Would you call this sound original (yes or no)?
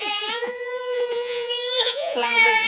no